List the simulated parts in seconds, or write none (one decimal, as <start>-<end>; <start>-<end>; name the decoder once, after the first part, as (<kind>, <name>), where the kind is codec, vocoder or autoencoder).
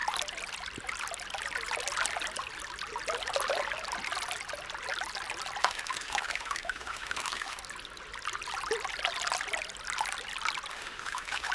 5.6-7.6 (autoencoder, DAC-VAE); 10.7-11.5